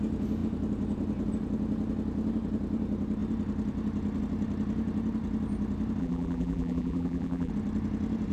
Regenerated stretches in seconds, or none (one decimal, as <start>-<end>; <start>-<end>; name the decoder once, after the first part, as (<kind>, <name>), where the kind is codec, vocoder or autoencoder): 6.0-7.5 (vocoder, BigVGAN v2)